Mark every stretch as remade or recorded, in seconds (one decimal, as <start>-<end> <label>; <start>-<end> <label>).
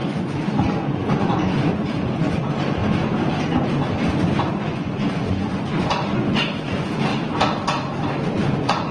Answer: 0.0-2.8 remade; 2.8-4.5 recorded; 4.5-7.1 remade; 7.1-8.4 recorded; 8.4-8.9 remade